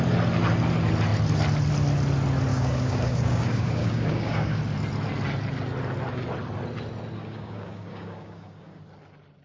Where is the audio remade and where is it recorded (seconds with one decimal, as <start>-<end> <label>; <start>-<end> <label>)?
0.0-2.5 recorded; 2.5-4.6 remade; 4.6-7.2 recorded; 7.2-8.8 remade; 8.8-9.4 recorded